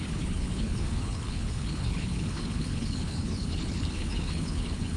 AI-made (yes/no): yes